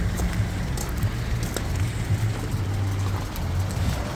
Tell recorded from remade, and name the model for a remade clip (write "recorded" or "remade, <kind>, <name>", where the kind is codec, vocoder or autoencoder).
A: recorded